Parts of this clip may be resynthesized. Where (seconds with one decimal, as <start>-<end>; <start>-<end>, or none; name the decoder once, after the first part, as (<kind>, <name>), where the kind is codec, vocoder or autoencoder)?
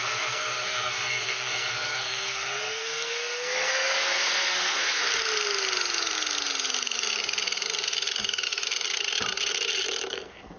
0.0-5.0 (codec, SNAC); 10.1-10.6